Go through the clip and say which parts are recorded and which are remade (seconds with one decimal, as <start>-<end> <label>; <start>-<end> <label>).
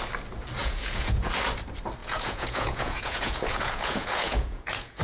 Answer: 0.0-0.6 recorded; 0.6-1.3 remade; 1.3-2.0 recorded; 2.0-5.0 remade